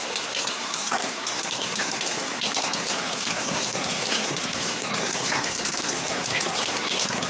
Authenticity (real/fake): fake